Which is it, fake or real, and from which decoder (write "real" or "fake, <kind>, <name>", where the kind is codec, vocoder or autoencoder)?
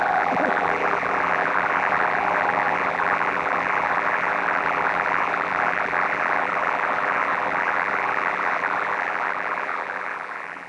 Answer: fake, vocoder, BigVGAN v2